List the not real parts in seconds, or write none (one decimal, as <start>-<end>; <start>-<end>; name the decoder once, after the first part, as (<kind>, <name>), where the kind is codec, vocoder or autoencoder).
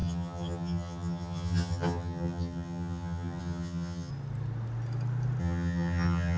0.0-4.1 (vocoder, HiFi-GAN); 5.4-6.4